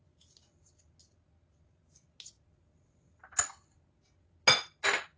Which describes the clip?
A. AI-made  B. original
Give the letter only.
B